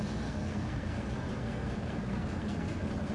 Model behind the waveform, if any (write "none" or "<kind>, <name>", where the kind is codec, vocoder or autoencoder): codec, SNAC